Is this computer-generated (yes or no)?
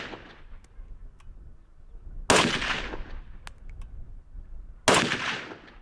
no